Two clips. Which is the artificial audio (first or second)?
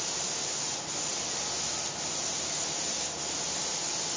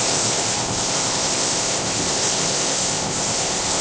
second